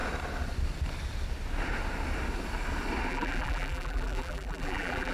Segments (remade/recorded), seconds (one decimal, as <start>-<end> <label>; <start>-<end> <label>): 0.0-3.1 recorded; 3.1-5.1 remade